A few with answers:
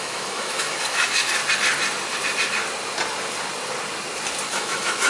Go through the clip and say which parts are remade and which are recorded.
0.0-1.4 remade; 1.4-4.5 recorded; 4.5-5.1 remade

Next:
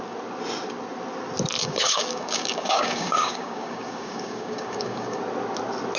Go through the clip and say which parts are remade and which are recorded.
0.0-1.6 recorded; 1.6-5.2 remade; 5.2-6.0 recorded

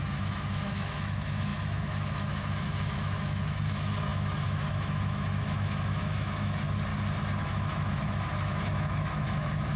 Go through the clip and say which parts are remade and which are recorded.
0.0-6.9 remade; 6.9-7.4 recorded; 7.4-9.8 remade

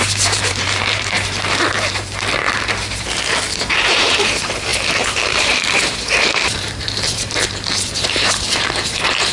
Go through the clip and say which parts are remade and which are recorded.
0.0-9.3 remade

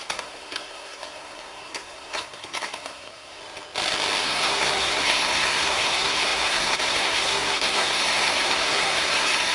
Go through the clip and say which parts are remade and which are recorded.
0.0-3.4 remade; 3.4-4.2 recorded; 4.2-9.5 remade

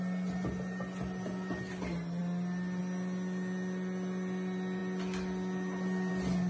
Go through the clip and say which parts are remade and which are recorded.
0.0-6.5 recorded